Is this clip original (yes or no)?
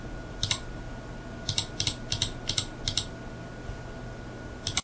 yes